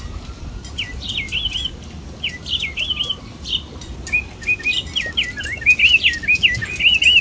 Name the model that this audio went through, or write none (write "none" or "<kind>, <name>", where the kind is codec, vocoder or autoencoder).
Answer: none